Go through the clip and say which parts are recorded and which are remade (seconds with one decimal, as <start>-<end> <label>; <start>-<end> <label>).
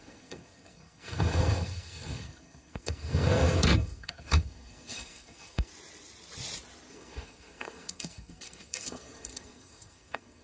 0.0-5.7 remade; 5.7-6.9 recorded; 6.9-10.4 remade